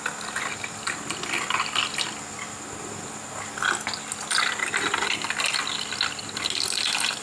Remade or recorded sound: recorded